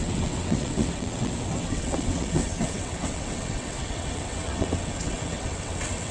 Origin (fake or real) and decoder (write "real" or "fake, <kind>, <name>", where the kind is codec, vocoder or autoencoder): fake, vocoder, WaveNeXt